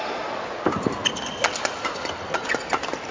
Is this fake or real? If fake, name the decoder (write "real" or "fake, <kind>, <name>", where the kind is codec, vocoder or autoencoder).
real